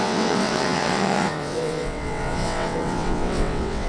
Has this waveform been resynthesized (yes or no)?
yes